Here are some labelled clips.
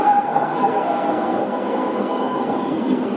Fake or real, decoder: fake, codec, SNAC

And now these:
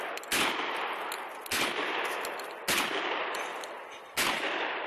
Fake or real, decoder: real